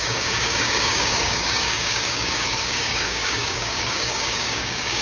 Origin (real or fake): fake